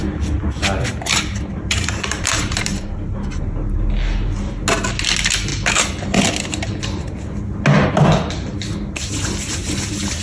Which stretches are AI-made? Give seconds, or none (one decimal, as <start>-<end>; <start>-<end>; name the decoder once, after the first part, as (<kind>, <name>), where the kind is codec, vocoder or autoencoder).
0.9-3.0 (vocoder, BigVGAN v2)